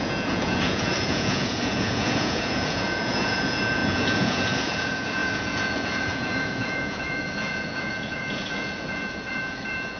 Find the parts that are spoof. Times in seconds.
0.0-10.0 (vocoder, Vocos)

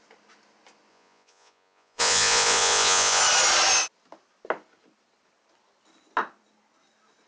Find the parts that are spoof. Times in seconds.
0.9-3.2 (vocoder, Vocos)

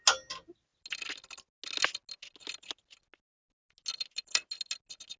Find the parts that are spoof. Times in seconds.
none